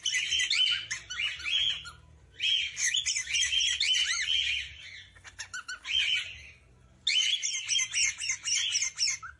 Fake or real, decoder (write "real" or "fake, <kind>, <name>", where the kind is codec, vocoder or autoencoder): real